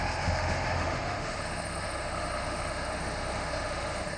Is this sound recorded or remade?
remade